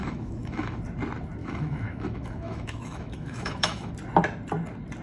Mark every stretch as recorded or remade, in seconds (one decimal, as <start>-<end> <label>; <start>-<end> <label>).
0.0-0.8 remade; 0.8-1.4 recorded; 1.4-3.9 remade; 3.9-5.0 recorded